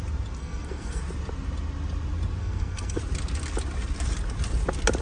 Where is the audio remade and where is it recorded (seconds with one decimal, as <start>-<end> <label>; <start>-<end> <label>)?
0.0-0.4 recorded; 0.4-1.0 remade; 1.0-2.4 recorded; 2.4-3.0 remade; 3.0-5.0 recorded